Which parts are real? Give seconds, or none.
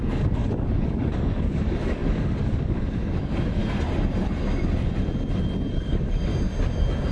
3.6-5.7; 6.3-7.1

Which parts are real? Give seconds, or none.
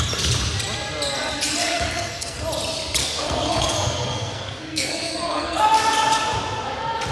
0.0-1.6; 2.4-3.0; 5.6-7.1